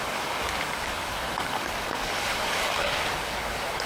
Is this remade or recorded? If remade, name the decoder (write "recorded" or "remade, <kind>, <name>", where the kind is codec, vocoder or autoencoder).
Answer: remade, codec, DAC